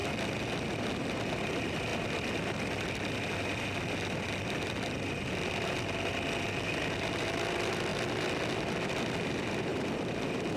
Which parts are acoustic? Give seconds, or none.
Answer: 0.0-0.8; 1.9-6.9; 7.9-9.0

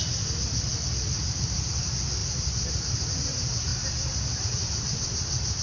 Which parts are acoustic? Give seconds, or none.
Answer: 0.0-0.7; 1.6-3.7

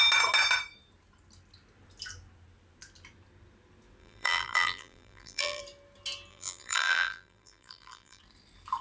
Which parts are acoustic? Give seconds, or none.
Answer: 0.0-4.0; 5.6-6.3; 8.2-8.8

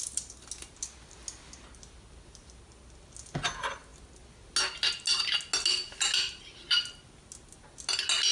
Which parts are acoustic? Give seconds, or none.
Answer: 0.0-8.3